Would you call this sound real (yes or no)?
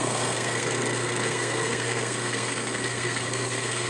no